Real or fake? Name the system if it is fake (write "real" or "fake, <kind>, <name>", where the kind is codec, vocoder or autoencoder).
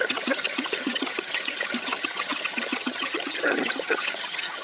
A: fake, vocoder, HiFi-GAN